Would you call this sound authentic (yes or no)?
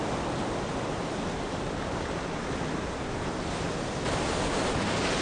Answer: yes